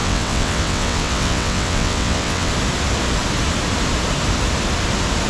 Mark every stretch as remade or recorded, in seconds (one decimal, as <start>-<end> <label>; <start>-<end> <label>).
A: 0.0-2.5 remade; 2.5-5.3 recorded